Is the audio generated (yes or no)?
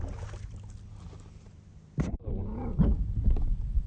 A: no